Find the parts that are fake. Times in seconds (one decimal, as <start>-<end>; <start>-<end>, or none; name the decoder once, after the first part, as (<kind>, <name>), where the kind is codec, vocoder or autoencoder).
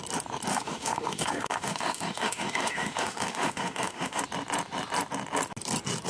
0.5-4.2 (autoencoder, DAC-VAE)